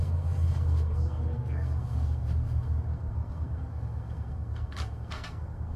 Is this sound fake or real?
fake